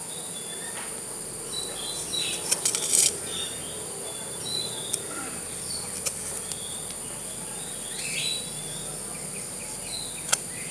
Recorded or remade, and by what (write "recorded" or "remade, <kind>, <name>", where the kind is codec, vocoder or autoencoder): recorded